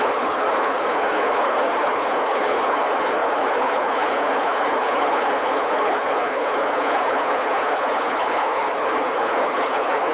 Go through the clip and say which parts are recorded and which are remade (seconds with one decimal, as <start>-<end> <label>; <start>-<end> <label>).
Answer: 0.0-10.1 remade